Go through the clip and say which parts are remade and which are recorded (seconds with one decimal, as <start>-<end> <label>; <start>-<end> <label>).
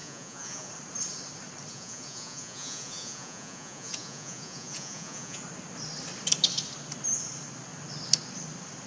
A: 0.0-0.7 remade; 0.7-1.7 recorded; 1.7-5.4 remade; 5.4-8.9 recorded